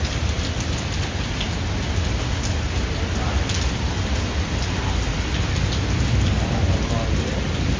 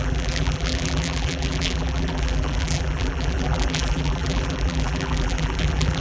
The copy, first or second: second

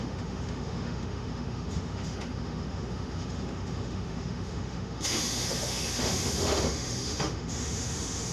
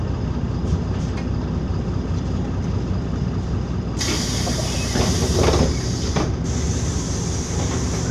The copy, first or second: first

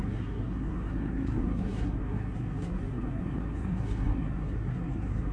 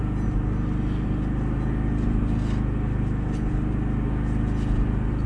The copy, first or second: first